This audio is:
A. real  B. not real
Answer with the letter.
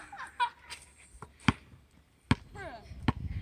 A